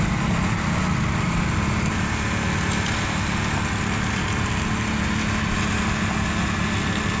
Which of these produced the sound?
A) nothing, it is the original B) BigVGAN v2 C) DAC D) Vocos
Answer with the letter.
A